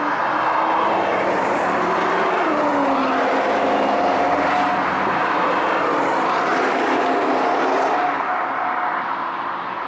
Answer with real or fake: real